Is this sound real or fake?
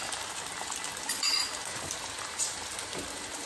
real